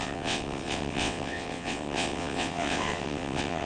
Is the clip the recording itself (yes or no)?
no